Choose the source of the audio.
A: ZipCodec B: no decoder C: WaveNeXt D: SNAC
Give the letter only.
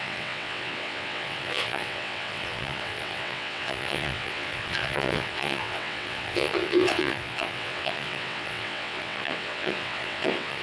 C